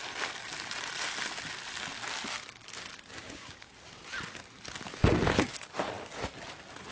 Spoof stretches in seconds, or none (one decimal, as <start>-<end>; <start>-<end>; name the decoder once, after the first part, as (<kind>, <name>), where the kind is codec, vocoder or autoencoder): 3.1-3.7 (codec, DAC)